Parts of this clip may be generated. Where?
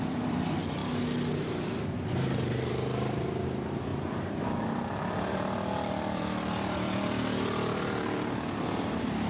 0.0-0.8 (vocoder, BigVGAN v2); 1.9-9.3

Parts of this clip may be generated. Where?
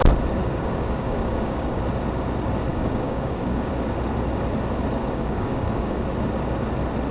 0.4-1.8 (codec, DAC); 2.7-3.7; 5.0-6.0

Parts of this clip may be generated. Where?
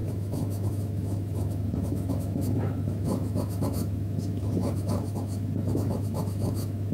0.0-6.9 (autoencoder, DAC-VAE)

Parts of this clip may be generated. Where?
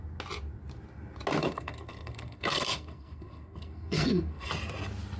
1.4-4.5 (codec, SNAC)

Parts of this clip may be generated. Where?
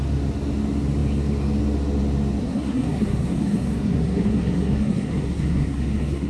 2.4-6.3 (codec, SNAC)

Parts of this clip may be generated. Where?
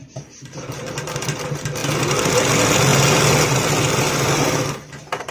none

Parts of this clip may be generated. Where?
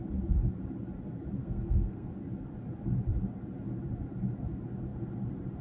1.4-2.1 (codec, SNAC)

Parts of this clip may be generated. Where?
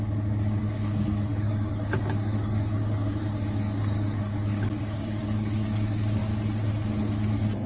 0.6-6.2 (codec, DAC); 7.0-7.7